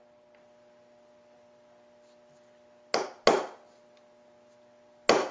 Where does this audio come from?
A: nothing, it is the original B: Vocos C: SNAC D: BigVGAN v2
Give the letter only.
A